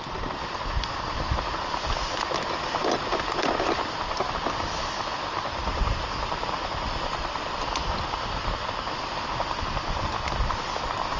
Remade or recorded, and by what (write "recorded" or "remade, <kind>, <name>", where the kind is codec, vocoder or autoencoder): recorded